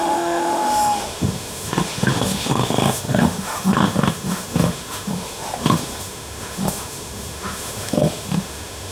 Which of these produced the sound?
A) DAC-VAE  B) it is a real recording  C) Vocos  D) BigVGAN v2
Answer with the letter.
A